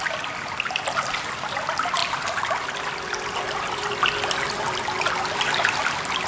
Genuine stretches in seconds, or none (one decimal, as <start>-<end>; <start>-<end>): 2.0-5.8